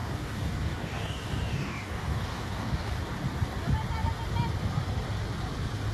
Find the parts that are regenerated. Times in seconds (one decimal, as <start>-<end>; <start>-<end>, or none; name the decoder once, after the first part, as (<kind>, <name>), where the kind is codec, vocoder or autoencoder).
0.0-3.0 (codec, DAC)